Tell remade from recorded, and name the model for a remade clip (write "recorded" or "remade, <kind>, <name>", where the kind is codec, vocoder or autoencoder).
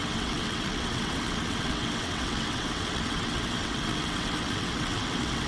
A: remade, vocoder, WaveNeXt